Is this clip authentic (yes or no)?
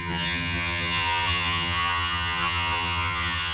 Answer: no